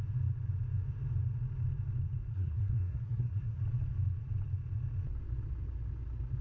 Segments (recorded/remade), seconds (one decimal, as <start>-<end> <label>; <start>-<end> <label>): 0.0-2.3 recorded; 2.3-3.6 remade; 3.6-6.4 recorded